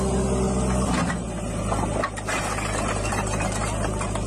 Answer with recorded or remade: recorded